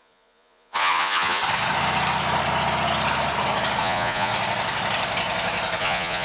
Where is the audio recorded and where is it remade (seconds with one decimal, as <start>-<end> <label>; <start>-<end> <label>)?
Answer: 0.0-1.4 remade; 1.4-3.8 recorded; 3.8-4.3 remade; 4.3-5.8 recorded; 5.8-6.2 remade

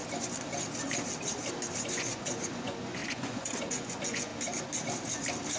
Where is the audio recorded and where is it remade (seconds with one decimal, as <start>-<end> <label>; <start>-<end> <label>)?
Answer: 0.0-1.8 recorded; 1.8-4.3 remade; 4.3-5.6 recorded

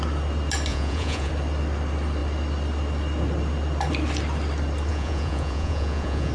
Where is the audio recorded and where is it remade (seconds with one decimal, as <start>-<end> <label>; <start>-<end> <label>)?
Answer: 0.0-0.7 recorded; 0.7-1.3 remade; 1.3-4.9 recorded; 4.9-6.3 remade

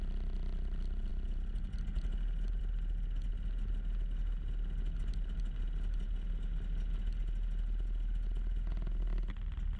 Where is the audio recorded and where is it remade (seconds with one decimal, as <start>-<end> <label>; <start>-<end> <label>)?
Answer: 0.0-9.8 recorded